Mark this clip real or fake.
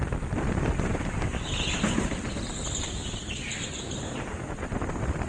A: real